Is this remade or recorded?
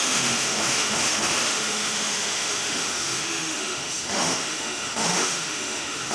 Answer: remade